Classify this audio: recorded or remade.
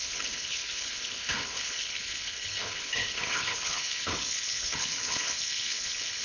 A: remade